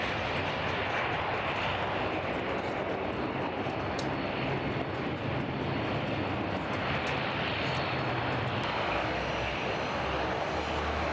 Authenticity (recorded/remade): recorded